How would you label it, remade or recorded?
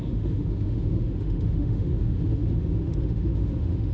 remade